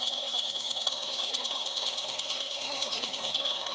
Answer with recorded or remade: remade